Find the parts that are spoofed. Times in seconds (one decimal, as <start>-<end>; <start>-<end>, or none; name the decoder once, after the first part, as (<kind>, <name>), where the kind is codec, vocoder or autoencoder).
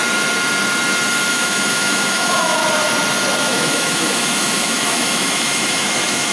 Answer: 1.3-2.6 (autoencoder, DAC-VAE); 3.4-6.3